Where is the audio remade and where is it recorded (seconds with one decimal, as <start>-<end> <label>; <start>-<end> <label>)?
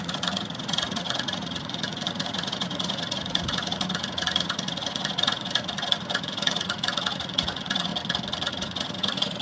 0.0-7.9 remade; 7.9-8.5 recorded; 8.5-9.4 remade